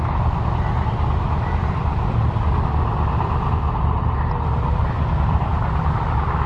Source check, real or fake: real